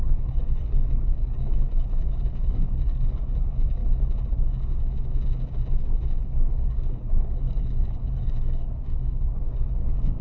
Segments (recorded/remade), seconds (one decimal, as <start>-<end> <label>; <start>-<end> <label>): 0.0-3.8 remade; 3.8-6.2 recorded; 6.2-10.2 remade